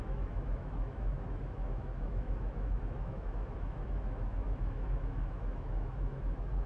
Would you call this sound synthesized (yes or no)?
yes